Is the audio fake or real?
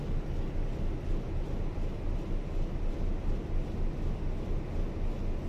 real